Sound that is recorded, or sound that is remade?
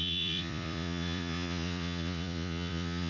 remade